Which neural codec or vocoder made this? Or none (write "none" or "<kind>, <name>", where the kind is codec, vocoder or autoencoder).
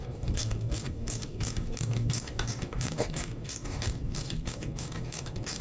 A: codec, DAC